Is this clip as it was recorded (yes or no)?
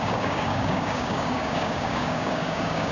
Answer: no